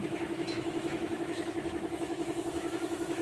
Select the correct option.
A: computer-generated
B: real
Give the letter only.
A